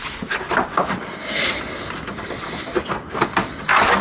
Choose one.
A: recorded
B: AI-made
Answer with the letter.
A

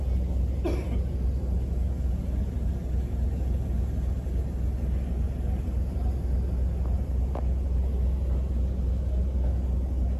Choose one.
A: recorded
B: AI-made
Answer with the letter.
A